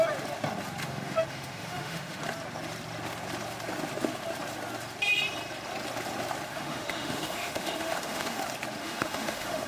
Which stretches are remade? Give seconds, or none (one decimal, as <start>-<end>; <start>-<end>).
0.8-2.2; 6.5-8.4; 8.8-9.7